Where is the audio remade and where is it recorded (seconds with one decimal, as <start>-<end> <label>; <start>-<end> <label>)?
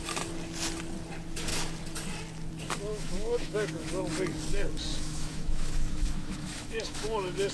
0.0-2.9 recorded; 2.9-3.9 remade; 3.9-4.9 recorded; 4.9-7.5 remade